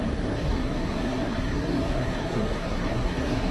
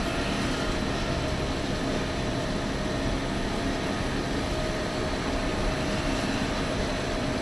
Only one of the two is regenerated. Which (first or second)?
first